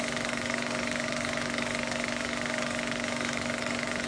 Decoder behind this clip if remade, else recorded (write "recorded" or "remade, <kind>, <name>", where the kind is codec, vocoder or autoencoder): remade, codec, DAC